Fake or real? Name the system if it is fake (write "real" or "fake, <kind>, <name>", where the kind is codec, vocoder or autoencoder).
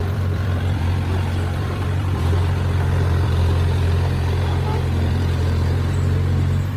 fake, vocoder, BigVGAN v2